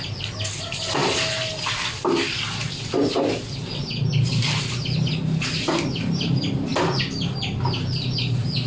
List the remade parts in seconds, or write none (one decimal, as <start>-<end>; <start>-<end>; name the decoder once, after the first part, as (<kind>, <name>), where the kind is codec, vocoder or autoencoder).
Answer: none